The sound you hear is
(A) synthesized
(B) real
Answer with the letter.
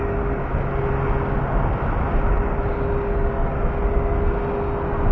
B